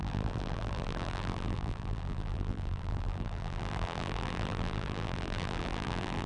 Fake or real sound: fake